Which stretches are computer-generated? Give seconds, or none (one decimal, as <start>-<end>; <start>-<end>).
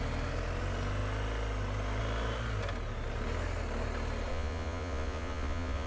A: 4.3-5.9